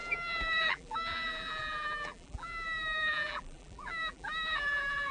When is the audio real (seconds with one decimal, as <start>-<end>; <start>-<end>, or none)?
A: none